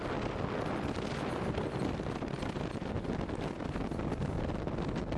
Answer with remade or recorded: recorded